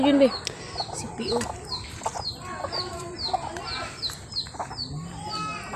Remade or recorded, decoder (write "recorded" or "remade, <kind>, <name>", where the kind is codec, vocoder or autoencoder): recorded